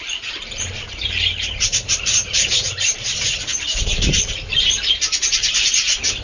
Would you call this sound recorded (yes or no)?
no